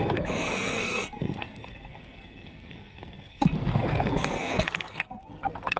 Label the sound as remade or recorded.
remade